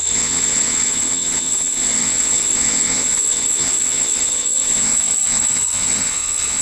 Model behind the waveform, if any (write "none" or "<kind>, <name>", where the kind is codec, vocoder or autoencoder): vocoder, WaveNeXt